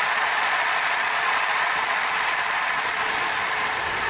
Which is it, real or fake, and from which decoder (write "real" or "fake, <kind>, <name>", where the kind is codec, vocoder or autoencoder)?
fake, vocoder, Vocos